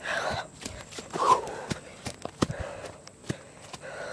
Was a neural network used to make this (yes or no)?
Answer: no